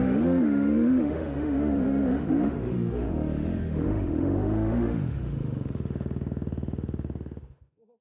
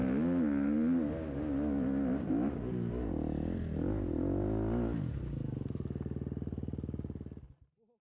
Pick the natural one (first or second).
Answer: second